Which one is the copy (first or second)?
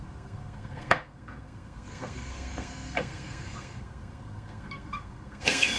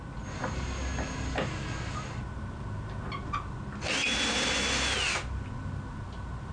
first